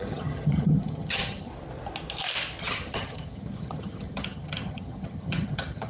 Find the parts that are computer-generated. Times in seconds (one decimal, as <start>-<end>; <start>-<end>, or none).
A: 0.0-1.5; 2.6-5.9